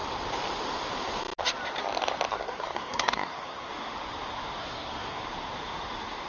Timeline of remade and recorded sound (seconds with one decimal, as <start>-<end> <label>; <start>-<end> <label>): 0.0-2.3 recorded; 2.3-3.7 remade; 3.7-4.6 recorded; 4.6-5.2 remade; 5.2-6.3 recorded

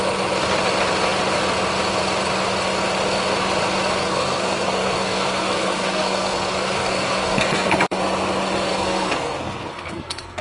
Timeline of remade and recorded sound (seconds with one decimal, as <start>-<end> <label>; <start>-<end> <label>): 0.0-4.0 recorded; 4.0-8.0 remade; 8.0-8.7 recorded; 8.7-10.4 remade

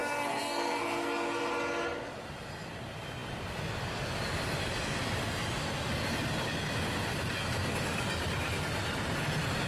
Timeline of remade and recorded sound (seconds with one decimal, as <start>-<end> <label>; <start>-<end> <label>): 0.0-1.5 remade; 1.5-9.7 recorded

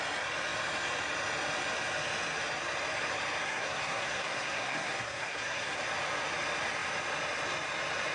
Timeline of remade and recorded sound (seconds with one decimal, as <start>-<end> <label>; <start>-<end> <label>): 0.0-3.4 recorded; 3.4-5.8 remade; 5.8-8.1 recorded